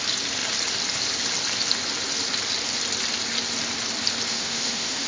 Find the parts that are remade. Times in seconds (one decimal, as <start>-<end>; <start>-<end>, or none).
4.3-5.1

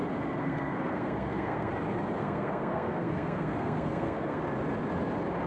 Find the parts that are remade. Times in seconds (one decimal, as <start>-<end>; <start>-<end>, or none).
0.4-1.7; 2.2-4.4

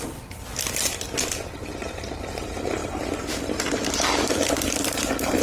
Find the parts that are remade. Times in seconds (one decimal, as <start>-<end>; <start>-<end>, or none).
none